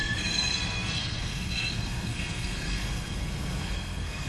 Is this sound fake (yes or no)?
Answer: yes